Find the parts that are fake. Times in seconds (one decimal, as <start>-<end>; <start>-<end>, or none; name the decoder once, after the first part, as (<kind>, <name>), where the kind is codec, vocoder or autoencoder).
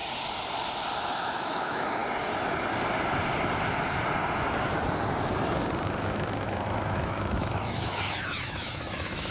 1.1-2.0 (autoencoder, DAC-VAE); 5.9-9.3